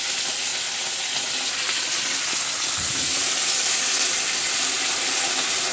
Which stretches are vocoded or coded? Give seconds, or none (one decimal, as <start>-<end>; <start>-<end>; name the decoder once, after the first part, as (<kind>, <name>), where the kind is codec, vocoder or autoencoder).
none